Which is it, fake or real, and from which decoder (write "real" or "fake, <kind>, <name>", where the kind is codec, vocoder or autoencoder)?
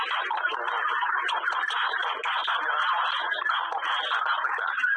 real